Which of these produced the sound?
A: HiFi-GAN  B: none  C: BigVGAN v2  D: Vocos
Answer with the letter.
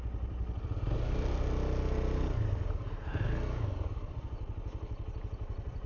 B